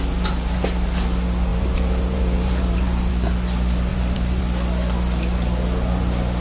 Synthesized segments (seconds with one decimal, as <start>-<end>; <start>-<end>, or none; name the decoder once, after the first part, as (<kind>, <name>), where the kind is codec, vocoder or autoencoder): 1.5-3.1 (vocoder, BigVGAN v2); 3.9-4.4